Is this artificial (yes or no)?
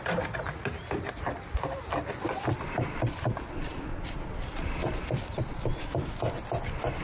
no